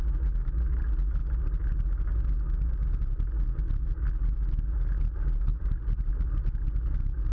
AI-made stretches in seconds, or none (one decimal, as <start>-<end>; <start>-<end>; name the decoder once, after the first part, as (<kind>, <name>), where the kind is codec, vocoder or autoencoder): 5.5-6.1 (vocoder, BigVGAN v2)